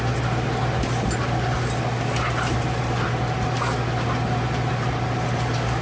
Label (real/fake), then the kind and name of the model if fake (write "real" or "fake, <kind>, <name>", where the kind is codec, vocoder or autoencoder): real